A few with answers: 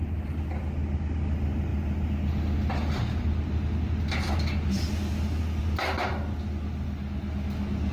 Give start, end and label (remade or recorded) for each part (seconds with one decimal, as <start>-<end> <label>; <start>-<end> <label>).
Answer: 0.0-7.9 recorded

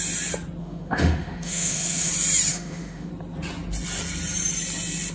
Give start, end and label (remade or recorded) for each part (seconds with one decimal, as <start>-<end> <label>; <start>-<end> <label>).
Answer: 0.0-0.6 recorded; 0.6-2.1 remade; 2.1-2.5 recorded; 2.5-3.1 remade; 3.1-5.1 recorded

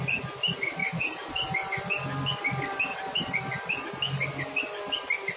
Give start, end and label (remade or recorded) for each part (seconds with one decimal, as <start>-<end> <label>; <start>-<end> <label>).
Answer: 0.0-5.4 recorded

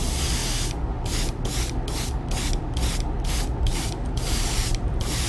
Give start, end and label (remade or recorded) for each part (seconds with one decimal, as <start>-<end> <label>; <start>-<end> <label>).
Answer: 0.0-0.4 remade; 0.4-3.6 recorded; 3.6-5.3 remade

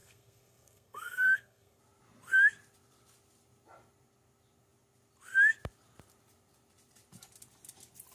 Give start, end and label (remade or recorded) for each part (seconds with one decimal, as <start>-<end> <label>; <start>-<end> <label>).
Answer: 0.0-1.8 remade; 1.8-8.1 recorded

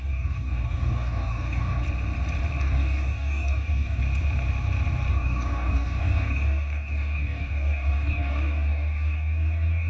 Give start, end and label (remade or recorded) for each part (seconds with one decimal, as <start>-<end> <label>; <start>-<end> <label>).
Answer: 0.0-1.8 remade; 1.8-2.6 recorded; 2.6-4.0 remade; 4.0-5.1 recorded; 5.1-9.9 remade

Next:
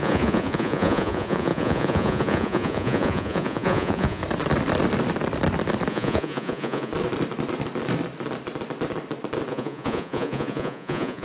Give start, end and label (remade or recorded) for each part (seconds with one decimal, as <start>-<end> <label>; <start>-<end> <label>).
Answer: 0.0-4.2 remade; 4.2-5.9 recorded; 5.9-6.9 remade; 6.9-9.5 recorded; 9.5-11.2 remade